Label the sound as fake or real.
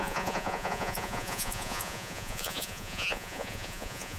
fake